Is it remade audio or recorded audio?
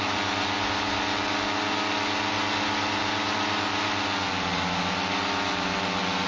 recorded